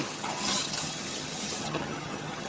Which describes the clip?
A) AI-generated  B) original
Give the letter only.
A